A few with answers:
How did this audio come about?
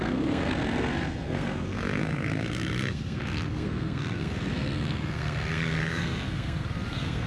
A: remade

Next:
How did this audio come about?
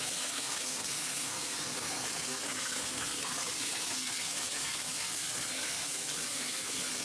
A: remade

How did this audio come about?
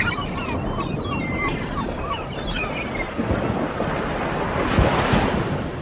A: recorded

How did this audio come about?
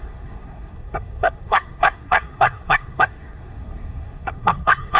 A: remade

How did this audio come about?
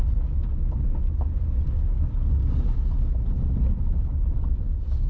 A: recorded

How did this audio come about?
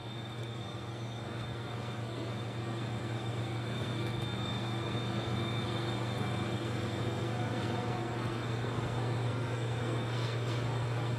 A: remade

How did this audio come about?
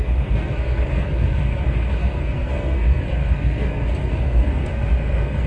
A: remade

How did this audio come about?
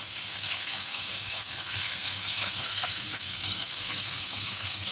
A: remade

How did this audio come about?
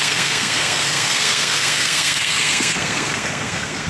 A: remade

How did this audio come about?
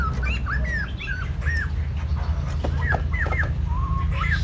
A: recorded